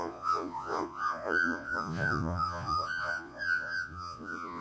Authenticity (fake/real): fake